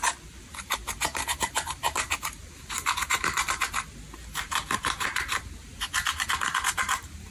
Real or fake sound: fake